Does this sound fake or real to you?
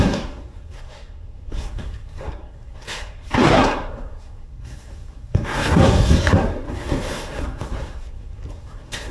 fake